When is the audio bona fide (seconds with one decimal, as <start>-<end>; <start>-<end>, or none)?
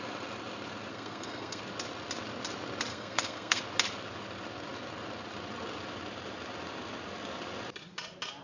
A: 0.0-0.9; 1.6-2.9; 3.6-8.4